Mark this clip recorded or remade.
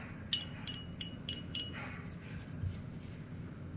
recorded